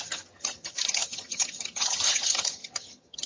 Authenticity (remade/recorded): remade